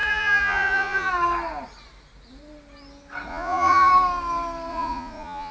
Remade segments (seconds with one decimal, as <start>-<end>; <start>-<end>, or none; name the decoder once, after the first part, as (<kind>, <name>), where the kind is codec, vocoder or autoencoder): 0.0-1.1 (vocoder, Vocos); 3.3-3.9; 4.7-5.5